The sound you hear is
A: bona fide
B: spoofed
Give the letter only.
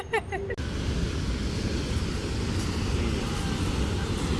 A